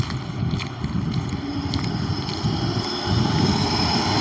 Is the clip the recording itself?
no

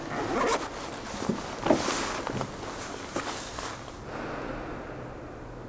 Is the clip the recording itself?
yes